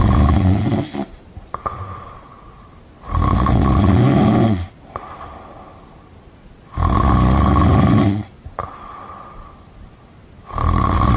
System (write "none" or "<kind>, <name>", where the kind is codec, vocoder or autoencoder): none